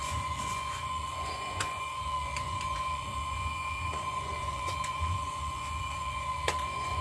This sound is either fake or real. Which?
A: fake